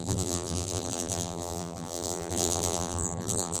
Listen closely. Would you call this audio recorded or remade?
remade